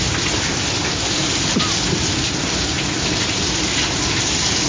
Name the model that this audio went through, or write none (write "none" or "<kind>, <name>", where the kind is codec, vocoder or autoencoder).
none